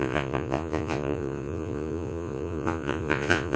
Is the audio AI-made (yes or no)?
yes